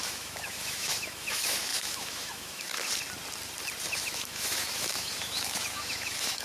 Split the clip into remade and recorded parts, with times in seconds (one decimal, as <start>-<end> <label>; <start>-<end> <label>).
0.0-2.7 remade; 2.7-4.0 recorded; 4.0-6.4 remade